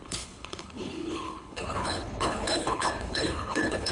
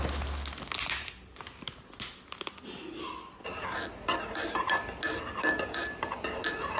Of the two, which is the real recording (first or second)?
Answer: second